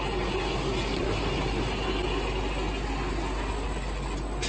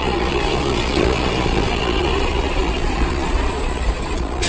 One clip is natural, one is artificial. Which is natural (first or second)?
first